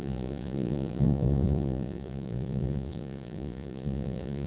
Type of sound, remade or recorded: remade